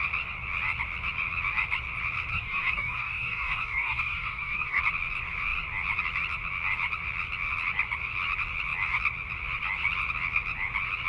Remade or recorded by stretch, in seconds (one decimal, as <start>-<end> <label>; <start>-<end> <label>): 0.0-2.3 recorded; 2.3-4.8 remade; 4.8-11.1 recorded